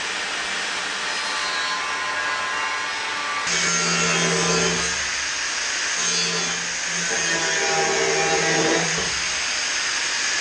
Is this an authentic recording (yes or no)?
yes